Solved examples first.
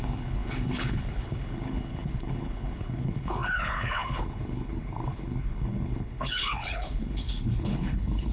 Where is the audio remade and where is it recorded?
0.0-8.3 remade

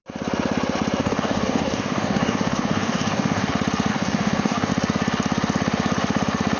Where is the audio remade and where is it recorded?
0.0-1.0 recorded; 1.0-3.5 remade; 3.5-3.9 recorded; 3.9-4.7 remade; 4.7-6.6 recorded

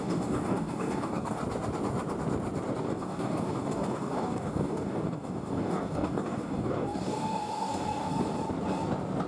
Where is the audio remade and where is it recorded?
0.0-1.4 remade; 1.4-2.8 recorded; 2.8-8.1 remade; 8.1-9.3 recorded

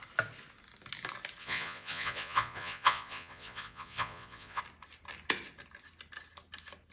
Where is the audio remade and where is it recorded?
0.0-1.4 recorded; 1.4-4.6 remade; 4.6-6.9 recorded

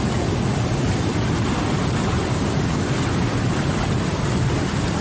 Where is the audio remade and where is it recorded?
0.0-5.0 recorded

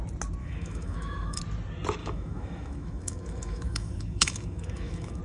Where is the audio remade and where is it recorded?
0.0-0.4 recorded; 0.4-1.4 remade; 1.4-2.0 recorded; 2.0-5.2 remade